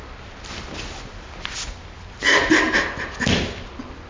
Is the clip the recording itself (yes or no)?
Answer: yes